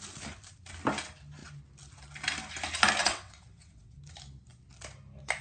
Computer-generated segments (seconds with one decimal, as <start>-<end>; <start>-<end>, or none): 3.0-4.0